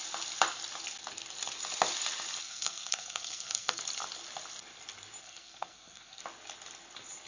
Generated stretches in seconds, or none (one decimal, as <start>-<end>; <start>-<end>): 2.4-3.8; 5.2-6.2